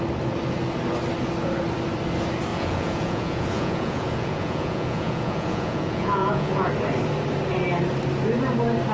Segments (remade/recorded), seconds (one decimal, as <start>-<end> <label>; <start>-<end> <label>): 0.0-2.5 recorded; 2.5-6.7 remade; 6.7-8.9 recorded